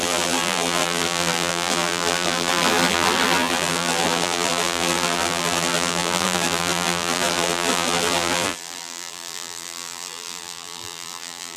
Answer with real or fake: fake